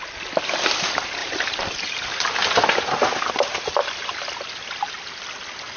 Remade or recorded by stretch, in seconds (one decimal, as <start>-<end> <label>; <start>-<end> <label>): 0.0-1.2 recorded; 1.2-2.3 remade; 2.3-5.8 recorded